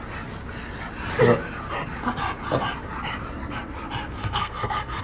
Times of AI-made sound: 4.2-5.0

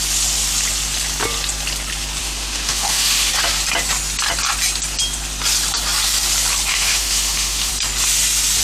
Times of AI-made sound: 2.2-3.3; 6.7-7.7

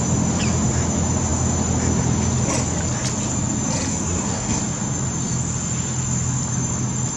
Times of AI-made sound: 3.9-4.6

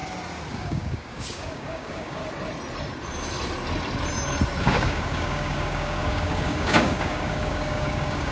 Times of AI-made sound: 0.5-2.2; 4.6-8.3